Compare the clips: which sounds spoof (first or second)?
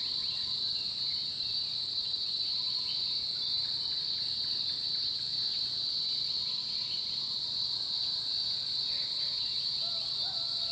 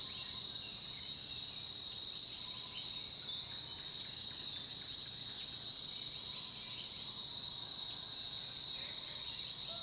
first